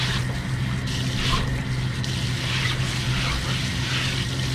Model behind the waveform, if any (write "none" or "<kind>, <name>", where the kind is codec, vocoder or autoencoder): none